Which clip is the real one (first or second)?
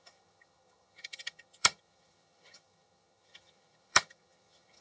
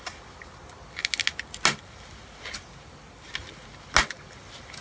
second